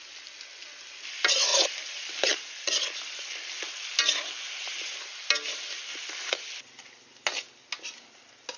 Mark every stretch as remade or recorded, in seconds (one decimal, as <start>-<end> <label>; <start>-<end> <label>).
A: 0.0-8.6 recorded